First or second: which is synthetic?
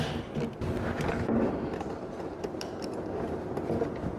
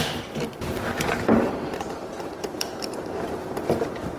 second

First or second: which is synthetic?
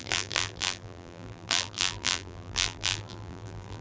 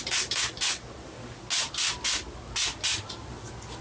first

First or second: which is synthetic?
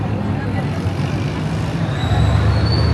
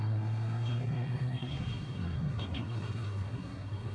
second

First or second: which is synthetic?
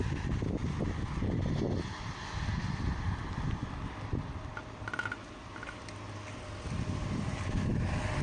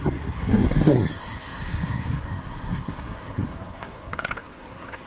second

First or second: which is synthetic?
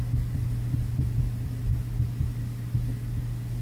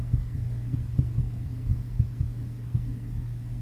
second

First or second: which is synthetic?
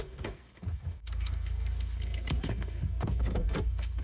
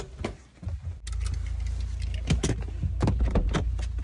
first